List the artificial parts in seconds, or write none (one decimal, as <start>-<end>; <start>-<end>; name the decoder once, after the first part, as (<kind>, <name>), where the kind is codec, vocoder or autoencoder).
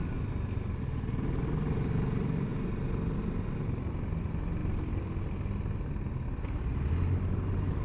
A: none